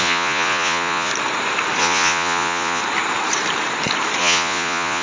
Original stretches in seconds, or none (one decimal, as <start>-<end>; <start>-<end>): 1.1-1.8; 2.8-4.2